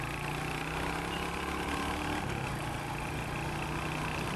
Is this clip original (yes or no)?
yes